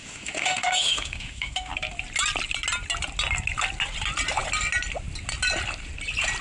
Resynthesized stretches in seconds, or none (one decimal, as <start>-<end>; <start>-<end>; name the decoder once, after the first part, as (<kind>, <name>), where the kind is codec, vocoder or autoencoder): 0.0-1.7 (autoencoder, DAC-VAE)

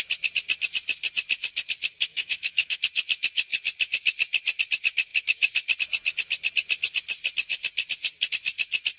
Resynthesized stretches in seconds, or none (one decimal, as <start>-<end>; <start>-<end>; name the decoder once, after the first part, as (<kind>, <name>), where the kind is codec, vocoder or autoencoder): 2.1-2.8 (autoencoder, DAC-VAE)

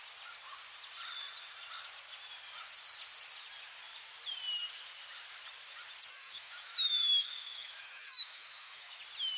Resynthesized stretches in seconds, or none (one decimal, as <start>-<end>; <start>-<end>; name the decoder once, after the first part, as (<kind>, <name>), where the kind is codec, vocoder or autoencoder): 6.1-9.0 (autoencoder, DAC-VAE)

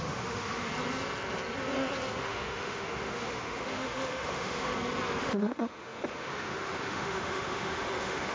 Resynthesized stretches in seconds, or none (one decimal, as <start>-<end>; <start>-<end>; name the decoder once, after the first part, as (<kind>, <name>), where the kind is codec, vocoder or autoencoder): 0.0-0.7 (autoencoder, DAC-VAE); 2.2-4.7; 5.2-8.3

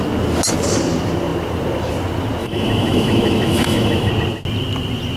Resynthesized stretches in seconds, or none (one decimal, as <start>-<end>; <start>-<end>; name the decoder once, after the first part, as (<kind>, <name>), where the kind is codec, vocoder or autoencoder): 2.4-4.1 (autoencoder, DAC-VAE)

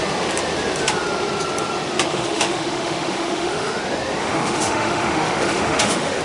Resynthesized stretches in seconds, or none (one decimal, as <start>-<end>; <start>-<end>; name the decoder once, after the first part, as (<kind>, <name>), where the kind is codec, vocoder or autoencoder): 2.1-3.8 (autoencoder, DAC-VAE); 4.2-6.2

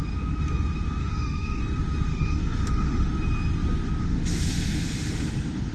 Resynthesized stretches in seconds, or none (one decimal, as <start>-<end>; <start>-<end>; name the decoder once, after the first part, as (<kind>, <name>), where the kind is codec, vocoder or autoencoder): 1.0-1.6 (autoencoder, DAC-VAE); 2.1-3.1; 4.0-5.3